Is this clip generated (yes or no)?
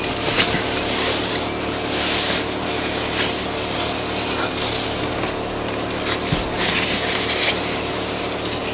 no